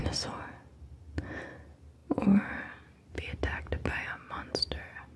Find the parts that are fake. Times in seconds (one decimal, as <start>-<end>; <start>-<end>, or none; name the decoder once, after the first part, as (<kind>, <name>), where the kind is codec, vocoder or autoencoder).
none